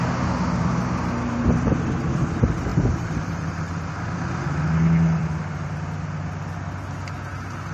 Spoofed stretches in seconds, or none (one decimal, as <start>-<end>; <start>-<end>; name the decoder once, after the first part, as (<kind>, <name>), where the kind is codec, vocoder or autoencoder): 2.7-3.9 (vocoder, BigVGAN v2)